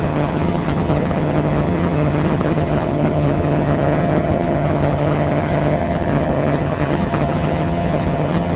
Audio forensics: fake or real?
fake